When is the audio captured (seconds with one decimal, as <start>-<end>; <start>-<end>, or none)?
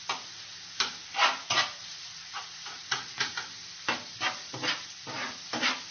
0.0-1.4; 3.3-5.9